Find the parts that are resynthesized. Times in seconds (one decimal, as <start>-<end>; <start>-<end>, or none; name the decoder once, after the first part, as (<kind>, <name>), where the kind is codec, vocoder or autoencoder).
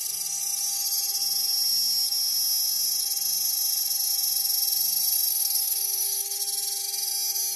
5.3-6.4 (codec, SNAC)